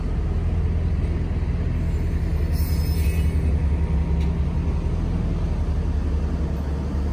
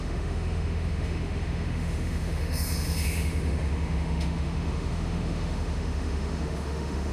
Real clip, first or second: first